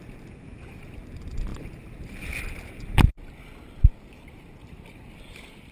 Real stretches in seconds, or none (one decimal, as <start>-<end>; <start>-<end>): 0.0-5.7